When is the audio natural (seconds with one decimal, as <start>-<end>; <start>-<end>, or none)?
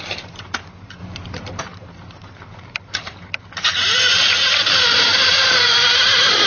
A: 1.0-1.6